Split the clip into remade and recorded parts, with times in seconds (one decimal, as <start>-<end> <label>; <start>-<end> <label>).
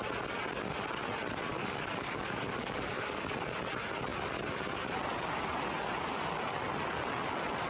0.0-1.5 recorded; 1.5-3.3 remade; 3.3-7.7 recorded